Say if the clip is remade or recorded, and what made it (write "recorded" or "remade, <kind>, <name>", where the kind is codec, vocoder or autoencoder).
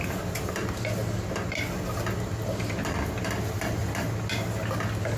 recorded